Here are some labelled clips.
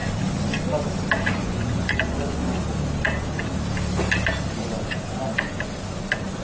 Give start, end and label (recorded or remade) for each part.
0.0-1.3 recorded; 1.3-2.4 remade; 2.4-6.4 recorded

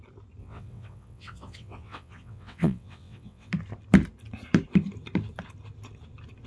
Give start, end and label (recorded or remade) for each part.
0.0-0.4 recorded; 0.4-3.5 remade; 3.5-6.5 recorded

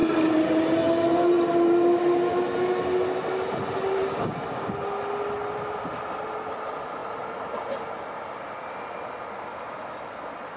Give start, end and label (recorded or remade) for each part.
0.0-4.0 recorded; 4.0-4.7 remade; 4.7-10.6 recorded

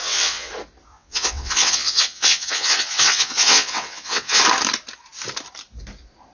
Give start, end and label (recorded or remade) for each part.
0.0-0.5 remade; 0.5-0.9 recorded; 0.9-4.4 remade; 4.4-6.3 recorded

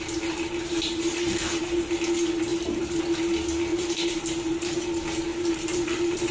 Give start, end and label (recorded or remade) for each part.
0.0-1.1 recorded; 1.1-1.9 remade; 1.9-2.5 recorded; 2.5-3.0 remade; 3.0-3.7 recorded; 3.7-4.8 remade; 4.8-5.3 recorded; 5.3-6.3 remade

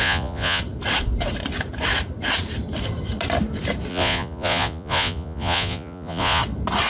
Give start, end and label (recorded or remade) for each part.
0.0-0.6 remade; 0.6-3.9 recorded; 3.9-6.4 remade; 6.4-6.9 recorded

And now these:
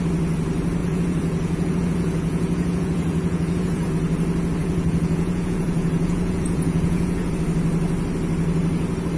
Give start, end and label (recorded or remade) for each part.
0.0-0.8 recorded; 0.8-3.9 remade; 3.9-4.6 recorded; 4.6-7.3 remade; 7.3-9.2 recorded

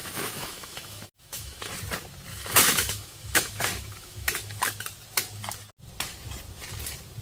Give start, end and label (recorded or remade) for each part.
0.0-1.7 remade; 1.7-2.3 recorded; 2.3-4.6 remade; 4.6-7.2 recorded